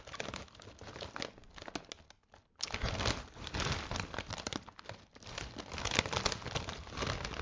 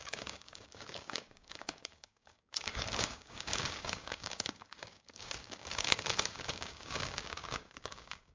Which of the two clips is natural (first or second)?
first